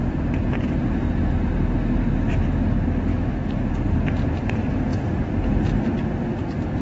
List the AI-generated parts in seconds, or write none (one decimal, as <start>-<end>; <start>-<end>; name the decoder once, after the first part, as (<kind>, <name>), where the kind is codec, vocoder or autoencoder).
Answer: 3.1-3.7 (autoencoder, DAC-VAE)